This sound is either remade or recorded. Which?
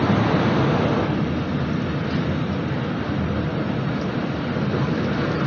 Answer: recorded